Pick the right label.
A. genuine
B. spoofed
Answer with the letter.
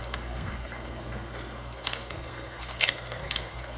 B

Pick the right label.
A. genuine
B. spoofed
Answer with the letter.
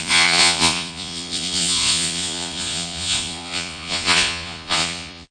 B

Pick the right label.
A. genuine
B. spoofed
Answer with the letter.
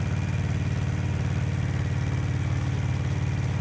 A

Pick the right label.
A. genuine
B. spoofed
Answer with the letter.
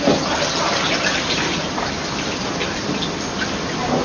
A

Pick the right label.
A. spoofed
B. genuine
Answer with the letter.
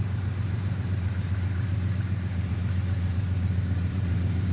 A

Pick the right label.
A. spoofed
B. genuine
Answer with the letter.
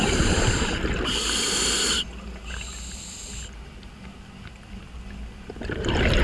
B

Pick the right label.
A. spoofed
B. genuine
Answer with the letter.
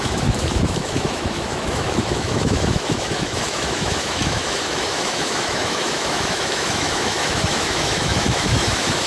A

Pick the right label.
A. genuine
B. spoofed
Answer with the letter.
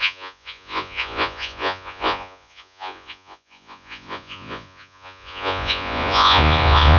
B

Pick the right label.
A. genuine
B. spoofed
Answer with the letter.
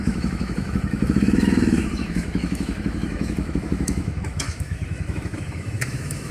B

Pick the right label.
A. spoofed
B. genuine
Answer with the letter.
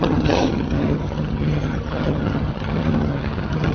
A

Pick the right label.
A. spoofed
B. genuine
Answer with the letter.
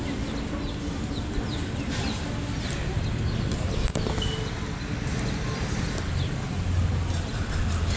B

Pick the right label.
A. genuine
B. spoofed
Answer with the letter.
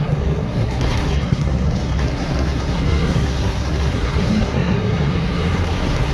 B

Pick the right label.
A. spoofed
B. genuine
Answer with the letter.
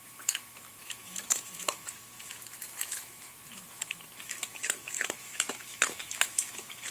A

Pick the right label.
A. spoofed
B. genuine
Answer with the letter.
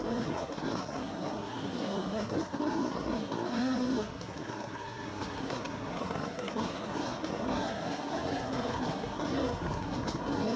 A